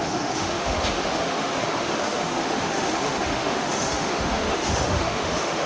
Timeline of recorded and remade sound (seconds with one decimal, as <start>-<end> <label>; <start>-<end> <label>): 0.0-5.7 remade